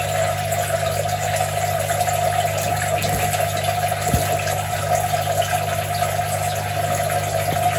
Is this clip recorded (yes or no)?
yes